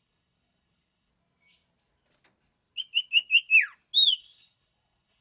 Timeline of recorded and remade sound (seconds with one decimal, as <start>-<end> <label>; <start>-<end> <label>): 0.0-1.1 remade; 1.1-4.2 recorded; 4.2-5.2 remade